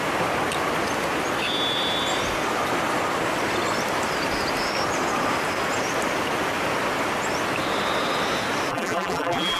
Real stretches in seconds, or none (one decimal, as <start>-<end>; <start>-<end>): 0.0-8.7